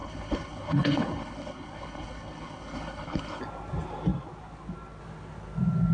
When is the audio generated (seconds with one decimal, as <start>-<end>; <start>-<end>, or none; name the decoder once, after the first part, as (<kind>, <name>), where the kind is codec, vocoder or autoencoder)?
0.0-3.4 (codec, HILCodec)